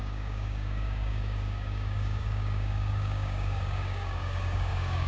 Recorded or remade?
remade